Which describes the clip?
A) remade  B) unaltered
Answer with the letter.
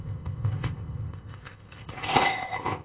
A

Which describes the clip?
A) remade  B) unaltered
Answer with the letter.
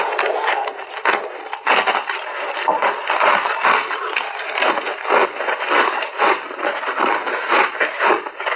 B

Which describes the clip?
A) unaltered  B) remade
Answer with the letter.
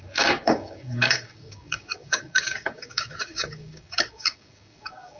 B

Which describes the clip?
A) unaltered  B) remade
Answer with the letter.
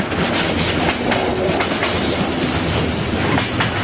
A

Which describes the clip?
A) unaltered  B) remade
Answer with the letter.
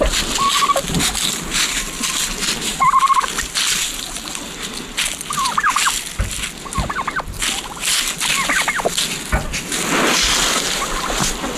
A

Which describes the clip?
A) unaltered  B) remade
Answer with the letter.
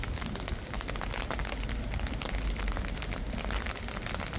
A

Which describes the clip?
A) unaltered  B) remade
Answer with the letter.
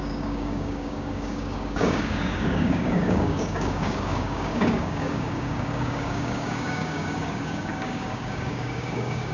B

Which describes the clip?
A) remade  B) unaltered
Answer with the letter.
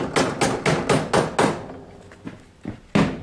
B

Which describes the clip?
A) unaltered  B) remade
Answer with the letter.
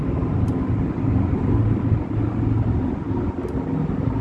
A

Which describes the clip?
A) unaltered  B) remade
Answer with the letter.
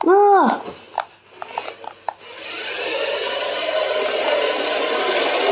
A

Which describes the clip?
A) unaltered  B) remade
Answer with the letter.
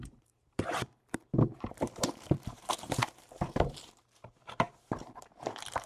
B